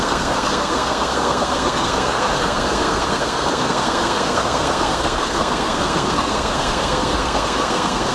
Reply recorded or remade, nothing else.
remade